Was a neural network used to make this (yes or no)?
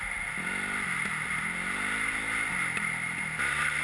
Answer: no